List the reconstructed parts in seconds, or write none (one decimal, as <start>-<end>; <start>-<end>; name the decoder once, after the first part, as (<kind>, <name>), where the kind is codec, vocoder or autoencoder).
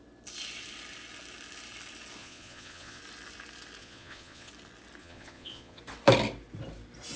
2.2-3.0 (vocoder, Vocos); 3.8-4.5; 5.0-5.8